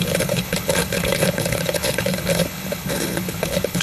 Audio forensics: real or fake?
fake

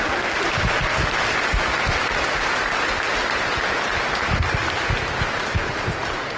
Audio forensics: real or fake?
real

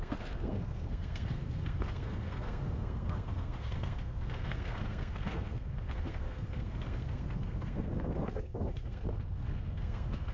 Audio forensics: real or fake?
fake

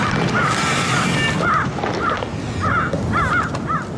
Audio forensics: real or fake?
real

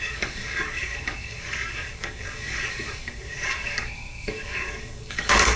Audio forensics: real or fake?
fake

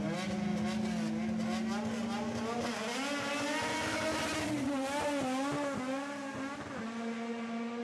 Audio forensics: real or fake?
real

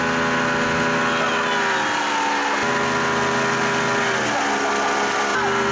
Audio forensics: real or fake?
real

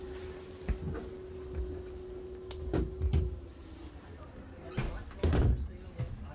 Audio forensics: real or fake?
real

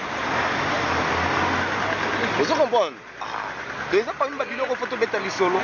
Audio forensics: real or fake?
real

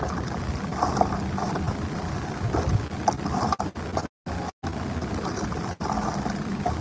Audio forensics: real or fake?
real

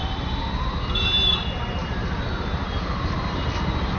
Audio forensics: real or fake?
real